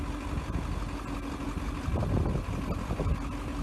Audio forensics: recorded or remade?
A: recorded